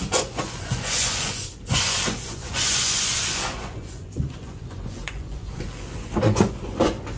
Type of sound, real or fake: fake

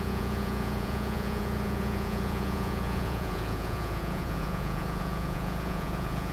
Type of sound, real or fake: fake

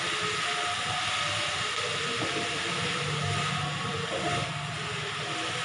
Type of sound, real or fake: real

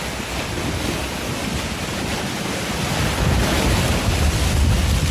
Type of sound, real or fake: real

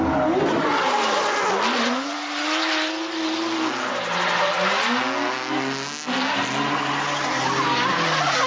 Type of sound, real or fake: real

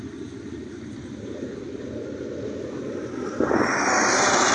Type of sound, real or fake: real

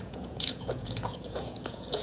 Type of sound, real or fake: fake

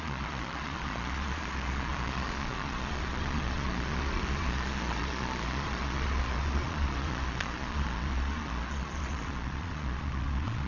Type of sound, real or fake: fake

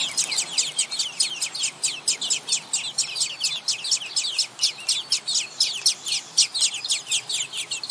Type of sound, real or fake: real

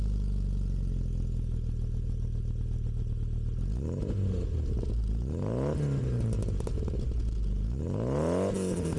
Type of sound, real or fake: real